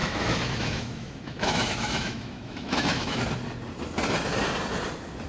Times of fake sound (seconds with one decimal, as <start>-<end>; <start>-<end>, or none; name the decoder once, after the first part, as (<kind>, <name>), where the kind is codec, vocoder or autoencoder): 0.0-3.2 (autoencoder, DAC-VAE)